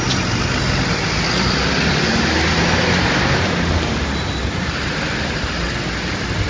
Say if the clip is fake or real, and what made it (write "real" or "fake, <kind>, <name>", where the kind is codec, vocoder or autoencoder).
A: real